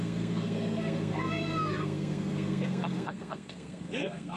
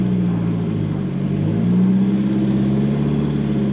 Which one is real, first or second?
second